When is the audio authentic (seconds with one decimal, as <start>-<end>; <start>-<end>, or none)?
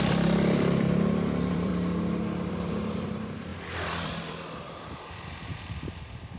1.7-2.5